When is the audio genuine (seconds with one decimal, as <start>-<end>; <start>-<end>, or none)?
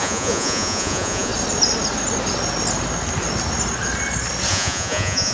1.3-4.5